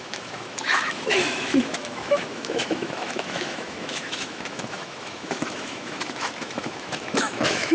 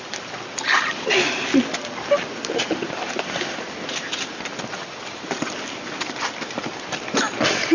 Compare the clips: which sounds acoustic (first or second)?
second